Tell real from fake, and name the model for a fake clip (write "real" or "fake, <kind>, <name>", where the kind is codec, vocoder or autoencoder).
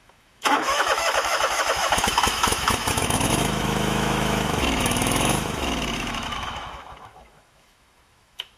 fake, autoencoder, DAC-VAE